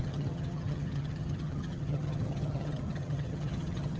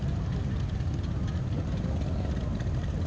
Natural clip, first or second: second